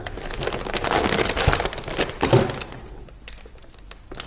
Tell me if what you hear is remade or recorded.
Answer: recorded